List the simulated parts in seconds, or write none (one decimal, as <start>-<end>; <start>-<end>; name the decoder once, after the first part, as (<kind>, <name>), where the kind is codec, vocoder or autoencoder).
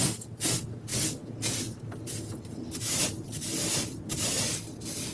none